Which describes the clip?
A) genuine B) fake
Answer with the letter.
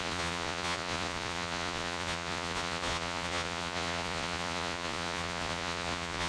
B